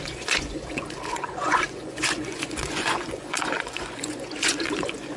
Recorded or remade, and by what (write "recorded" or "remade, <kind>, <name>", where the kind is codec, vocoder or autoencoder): remade, vocoder, Vocos